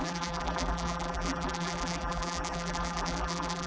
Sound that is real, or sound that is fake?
fake